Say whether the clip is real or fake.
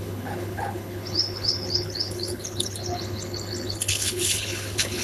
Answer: fake